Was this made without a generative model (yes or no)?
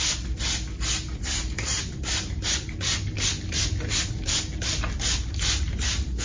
yes